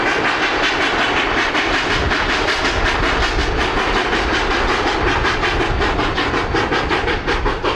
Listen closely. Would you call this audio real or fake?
real